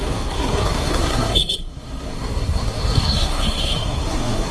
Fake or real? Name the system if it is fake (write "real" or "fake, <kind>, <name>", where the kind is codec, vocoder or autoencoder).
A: fake, codec, SNAC